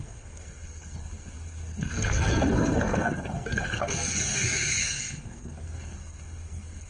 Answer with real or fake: fake